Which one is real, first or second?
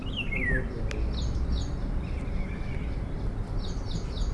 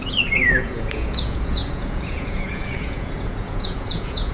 first